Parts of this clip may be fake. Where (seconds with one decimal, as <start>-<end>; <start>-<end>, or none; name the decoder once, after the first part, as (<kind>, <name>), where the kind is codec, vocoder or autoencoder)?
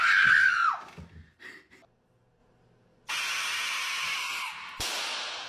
none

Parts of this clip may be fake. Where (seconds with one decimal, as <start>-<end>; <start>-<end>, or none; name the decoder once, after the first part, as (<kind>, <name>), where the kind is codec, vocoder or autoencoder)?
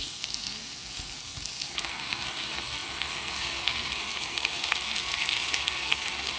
0.0-6.4 (codec, SNAC)